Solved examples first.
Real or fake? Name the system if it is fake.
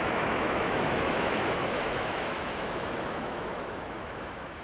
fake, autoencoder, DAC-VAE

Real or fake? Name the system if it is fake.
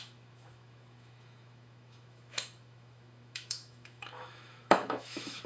fake, autoencoder, DAC-VAE